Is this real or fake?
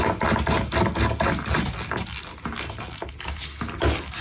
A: real